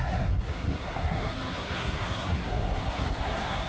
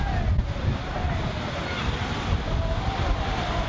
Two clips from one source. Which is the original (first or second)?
second